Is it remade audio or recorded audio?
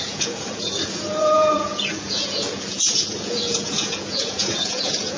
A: remade